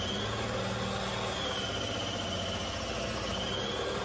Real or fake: real